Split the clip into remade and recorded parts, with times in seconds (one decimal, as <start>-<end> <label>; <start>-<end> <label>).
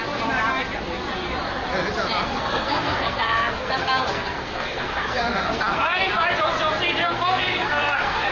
0.0-2.2 recorded; 2.2-6.1 remade; 6.1-7.0 recorded; 7.0-8.3 remade